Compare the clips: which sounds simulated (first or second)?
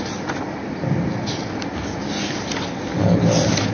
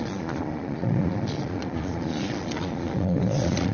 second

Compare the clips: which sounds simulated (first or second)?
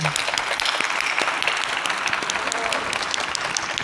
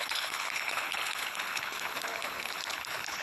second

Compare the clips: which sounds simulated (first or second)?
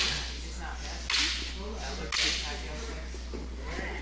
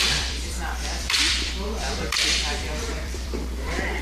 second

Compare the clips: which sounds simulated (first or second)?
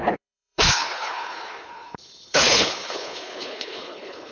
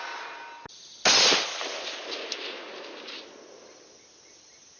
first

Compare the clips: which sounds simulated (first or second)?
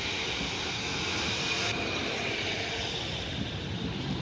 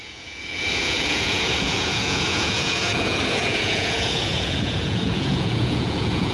second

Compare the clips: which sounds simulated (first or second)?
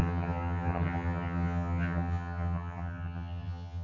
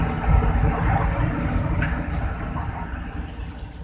first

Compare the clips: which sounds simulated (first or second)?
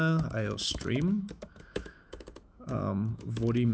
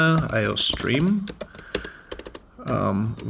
first